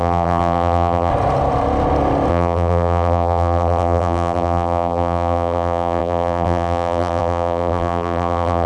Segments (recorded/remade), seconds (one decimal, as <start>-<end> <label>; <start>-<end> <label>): 0.0-1.1 remade; 1.1-2.3 recorded; 2.3-8.7 remade